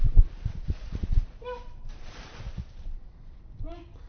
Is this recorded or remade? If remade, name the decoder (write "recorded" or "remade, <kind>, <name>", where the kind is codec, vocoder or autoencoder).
remade, vocoder, BigVGAN v2